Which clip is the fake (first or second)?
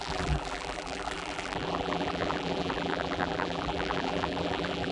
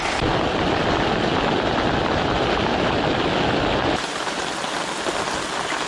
first